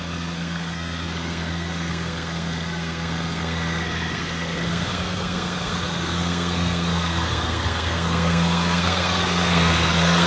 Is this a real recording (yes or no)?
no